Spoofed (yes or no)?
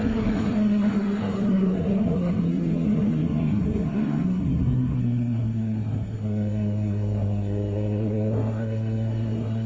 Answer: yes